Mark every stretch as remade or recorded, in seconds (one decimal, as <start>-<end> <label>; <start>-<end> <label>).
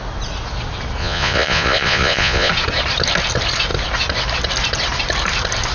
0.0-1.0 recorded; 1.0-2.5 remade; 2.5-5.7 recorded